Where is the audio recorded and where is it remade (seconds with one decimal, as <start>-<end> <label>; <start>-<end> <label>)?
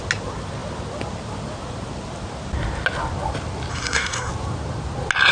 0.0-3.7 recorded; 3.7-4.3 remade; 4.3-5.3 recorded